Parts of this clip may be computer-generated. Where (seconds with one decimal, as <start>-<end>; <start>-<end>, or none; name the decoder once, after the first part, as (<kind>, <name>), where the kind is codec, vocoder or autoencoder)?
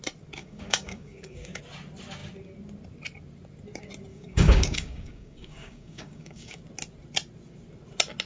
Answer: 0.4-1.6 (codec, DAC); 4.1-6.6